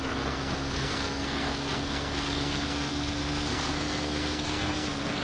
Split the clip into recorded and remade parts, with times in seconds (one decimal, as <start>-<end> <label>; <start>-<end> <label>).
0.0-5.2 remade

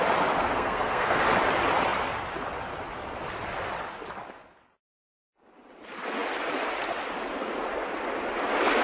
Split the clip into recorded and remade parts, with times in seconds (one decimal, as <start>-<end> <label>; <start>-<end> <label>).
0.0-0.4 recorded; 0.4-1.2 remade; 1.2-8.8 recorded

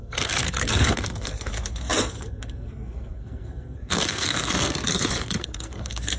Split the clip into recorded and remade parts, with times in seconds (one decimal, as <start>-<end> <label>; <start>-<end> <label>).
0.0-6.2 remade

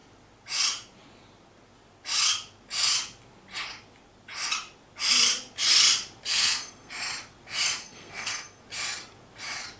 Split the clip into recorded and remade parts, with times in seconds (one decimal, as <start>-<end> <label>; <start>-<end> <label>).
0.0-6.3 recorded; 6.3-6.9 remade; 6.9-7.8 recorded; 7.8-8.6 remade; 8.6-9.8 recorded

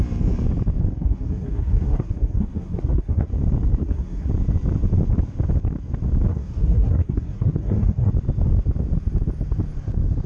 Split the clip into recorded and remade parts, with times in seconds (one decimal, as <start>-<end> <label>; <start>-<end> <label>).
0.0-0.9 recorded; 0.9-3.3 remade; 3.3-3.8 recorded; 3.8-4.3 remade; 4.3-6.3 recorded; 6.3-8.1 remade; 8.1-10.3 recorded

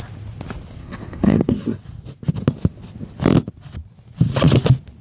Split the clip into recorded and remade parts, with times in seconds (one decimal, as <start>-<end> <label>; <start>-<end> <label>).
0.0-0.8 recorded; 0.8-1.8 remade; 1.8-5.0 recorded